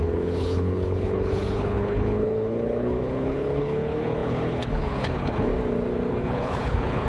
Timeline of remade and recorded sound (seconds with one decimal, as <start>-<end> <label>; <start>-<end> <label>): 0.0-5.5 remade; 5.5-6.1 recorded; 6.1-7.1 remade

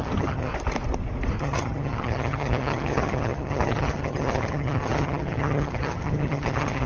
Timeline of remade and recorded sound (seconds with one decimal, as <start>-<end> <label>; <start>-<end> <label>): 0.0-0.5 remade; 0.5-1.4 recorded; 1.4-6.9 remade

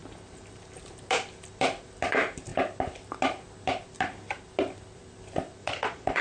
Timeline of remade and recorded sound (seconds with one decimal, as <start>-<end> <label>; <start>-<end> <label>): 0.0-5.6 recorded; 5.6-6.2 remade

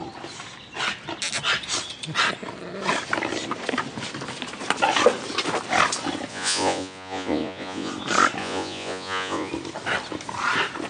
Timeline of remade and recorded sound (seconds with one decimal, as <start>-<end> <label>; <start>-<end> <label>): 0.0-6.3 recorded; 6.3-7.9 remade; 7.9-8.4 recorded; 8.4-9.5 remade; 9.5-10.9 recorded

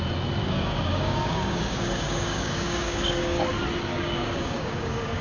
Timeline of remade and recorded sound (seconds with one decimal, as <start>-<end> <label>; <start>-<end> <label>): 0.0-0.4 recorded; 0.4-3.4 remade; 3.4-3.9 recorded; 3.9-5.2 remade

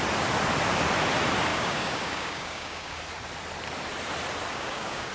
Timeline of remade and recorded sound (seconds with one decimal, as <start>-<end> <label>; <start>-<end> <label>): 0.0-1.5 recorded; 1.5-3.0 remade; 3.0-4.5 recorded; 4.5-5.1 remade

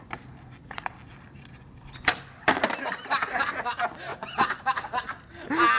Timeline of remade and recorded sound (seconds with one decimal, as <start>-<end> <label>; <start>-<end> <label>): 0.0-4.1 recorded; 4.1-4.6 remade; 4.6-5.8 recorded

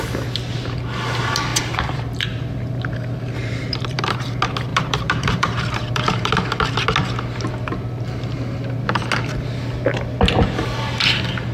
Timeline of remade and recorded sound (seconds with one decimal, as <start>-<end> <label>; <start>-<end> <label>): 0.0-1.5 recorded; 1.5-2.8 remade; 2.8-3.4 recorded; 3.4-4.2 remade; 4.2-4.7 recorded; 4.7-6.3 remade; 6.3-11.5 recorded